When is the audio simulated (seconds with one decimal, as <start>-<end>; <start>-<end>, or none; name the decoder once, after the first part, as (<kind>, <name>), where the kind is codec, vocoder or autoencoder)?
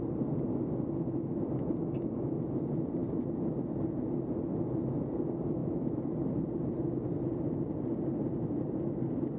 none